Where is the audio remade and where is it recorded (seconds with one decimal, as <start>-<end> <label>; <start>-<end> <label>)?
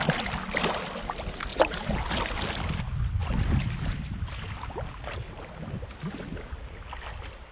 0.0-7.5 recorded